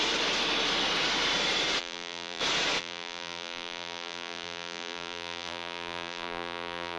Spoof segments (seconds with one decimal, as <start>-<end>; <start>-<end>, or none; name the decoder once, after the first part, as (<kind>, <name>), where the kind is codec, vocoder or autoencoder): 1.8-2.4 (vocoder, BigVGAN v2); 2.8-7.0